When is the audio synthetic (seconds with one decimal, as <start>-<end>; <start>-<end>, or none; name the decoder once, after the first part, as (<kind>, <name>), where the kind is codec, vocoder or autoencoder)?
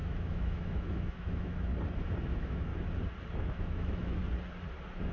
0.0-1.7 (autoencoder, DAC-VAE); 2.2-2.7; 3.4-4.2